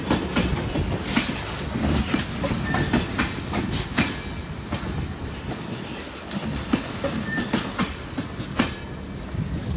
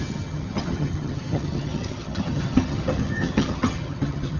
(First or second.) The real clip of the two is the first